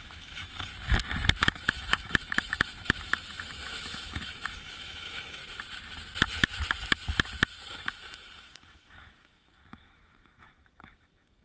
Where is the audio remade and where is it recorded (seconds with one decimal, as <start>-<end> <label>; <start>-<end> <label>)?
0.0-0.7 remade; 0.7-1.4 recorded; 1.4-5.4 remade; 5.4-7.7 recorded; 7.7-11.4 remade